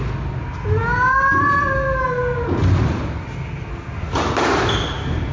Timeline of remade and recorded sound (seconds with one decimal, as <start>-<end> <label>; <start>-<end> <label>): 0.0-5.3 recorded